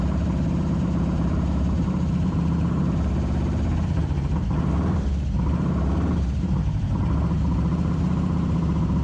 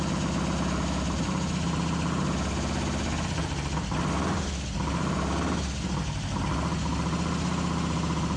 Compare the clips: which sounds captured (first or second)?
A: second